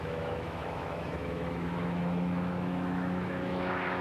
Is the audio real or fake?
fake